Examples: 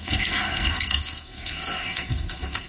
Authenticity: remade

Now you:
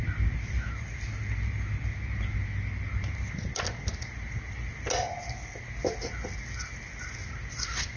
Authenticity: recorded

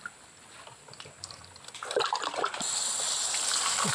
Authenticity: recorded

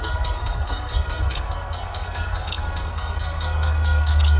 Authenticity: remade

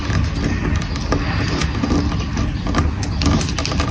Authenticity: recorded